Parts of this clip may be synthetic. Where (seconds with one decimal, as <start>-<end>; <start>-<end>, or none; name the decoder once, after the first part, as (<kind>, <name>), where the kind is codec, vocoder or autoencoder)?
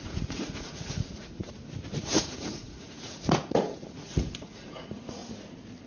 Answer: 0.0-1.4 (vocoder, Vocos); 2.0-5.2